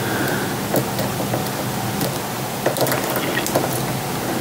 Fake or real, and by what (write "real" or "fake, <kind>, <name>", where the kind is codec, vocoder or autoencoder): real